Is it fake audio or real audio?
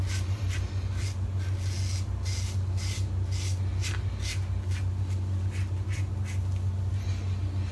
real